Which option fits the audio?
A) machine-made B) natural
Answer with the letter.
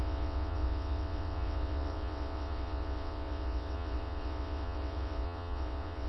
A